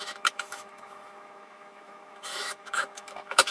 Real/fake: fake